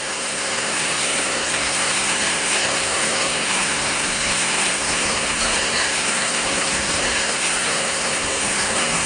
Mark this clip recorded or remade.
remade